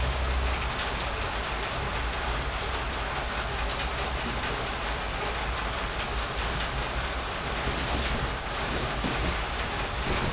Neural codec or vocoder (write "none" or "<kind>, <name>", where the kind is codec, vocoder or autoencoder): none